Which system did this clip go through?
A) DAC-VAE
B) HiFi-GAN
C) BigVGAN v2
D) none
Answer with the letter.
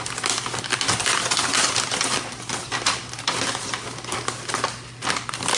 D